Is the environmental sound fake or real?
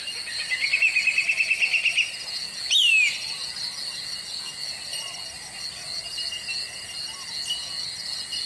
real